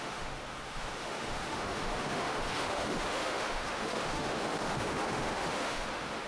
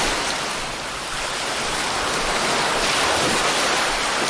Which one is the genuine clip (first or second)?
second